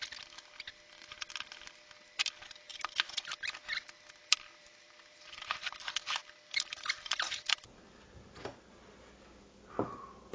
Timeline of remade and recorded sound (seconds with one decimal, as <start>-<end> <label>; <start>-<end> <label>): 0.0-4.2 recorded; 4.2-7.6 remade; 7.6-10.3 recorded